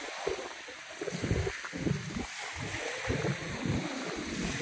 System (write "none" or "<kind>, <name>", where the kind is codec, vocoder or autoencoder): none